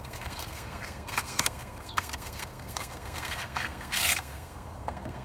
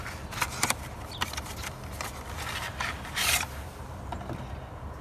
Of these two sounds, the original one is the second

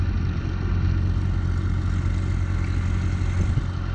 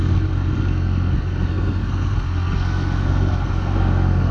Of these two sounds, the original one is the first